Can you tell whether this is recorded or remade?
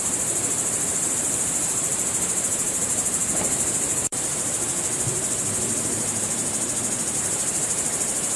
remade